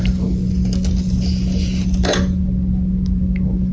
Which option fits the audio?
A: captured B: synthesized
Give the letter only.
A